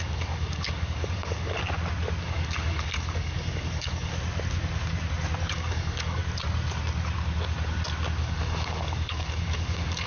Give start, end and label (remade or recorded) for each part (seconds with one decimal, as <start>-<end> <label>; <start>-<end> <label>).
0.0-1.6 remade; 1.6-2.2 recorded; 2.2-4.1 remade; 4.1-5.5 recorded; 5.5-6.2 remade; 6.2-8.2 recorded; 8.2-10.1 remade